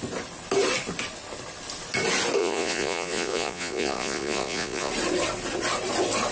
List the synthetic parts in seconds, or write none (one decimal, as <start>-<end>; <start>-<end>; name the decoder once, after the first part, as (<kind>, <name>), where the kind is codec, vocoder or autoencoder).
2.4-4.9 (vocoder, Vocos)